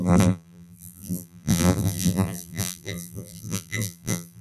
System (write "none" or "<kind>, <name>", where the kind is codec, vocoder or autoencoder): vocoder, BigVGAN v2